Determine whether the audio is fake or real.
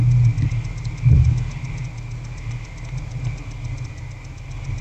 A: real